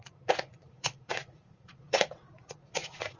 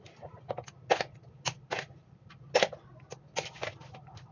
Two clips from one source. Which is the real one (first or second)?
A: second